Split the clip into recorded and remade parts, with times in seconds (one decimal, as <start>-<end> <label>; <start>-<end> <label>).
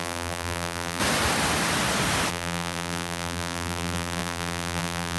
0.0-1.0 remade; 1.0-2.3 recorded; 2.3-5.2 remade